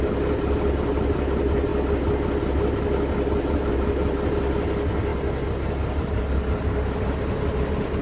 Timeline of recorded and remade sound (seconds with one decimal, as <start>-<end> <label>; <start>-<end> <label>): 0.0-8.0 recorded